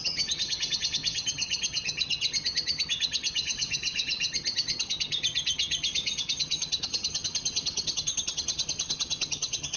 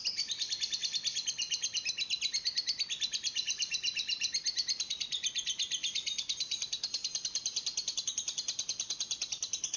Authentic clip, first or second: second